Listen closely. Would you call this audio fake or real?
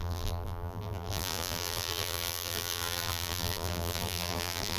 fake